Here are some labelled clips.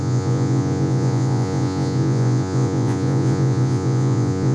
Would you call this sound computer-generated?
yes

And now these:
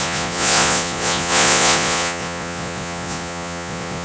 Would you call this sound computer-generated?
yes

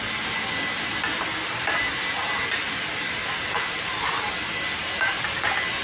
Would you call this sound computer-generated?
no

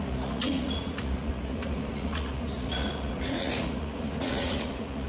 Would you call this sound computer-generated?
yes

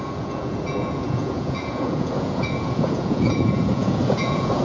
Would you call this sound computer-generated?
yes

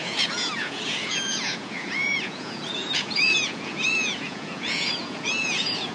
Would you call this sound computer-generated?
yes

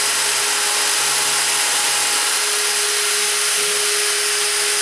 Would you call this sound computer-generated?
no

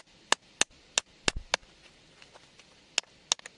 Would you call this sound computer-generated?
no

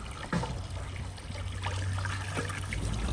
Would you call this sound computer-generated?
no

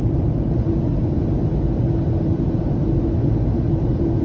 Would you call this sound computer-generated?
no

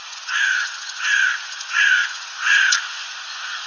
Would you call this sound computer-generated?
yes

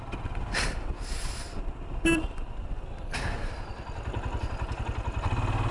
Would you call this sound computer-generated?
no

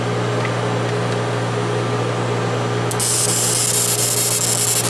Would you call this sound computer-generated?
no